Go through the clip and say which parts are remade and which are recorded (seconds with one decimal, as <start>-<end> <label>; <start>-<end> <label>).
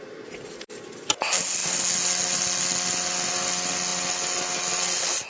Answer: 0.0-5.3 recorded